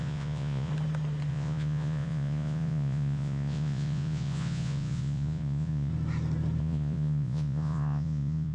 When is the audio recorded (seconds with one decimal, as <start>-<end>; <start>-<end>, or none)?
0.7-1.3; 5.9-6.6